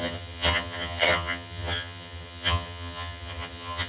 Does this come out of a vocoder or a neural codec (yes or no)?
yes